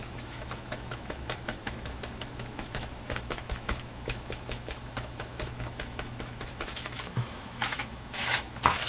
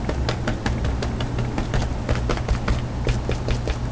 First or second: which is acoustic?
second